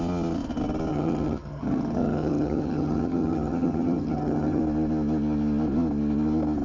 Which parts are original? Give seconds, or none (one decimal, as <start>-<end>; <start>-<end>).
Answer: 0.0-0.9; 4.6-6.6